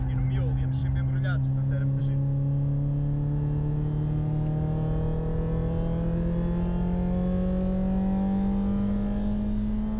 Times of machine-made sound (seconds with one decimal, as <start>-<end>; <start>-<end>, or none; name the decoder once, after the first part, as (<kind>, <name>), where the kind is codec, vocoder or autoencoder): none